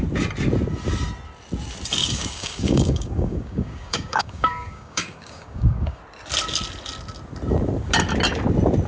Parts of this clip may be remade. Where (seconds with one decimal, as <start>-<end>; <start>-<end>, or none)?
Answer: 2.0-6.0